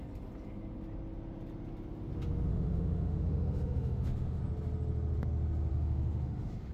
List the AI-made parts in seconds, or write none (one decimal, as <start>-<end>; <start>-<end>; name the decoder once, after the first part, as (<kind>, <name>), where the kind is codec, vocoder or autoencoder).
2.5-4.4 (autoencoder, DAC-VAE); 5.7-6.7